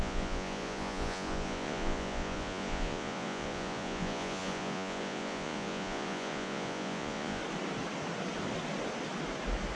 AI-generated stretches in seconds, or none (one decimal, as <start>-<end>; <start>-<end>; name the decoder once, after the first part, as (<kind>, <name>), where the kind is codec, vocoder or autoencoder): 0.0-7.4 (vocoder, Vocos)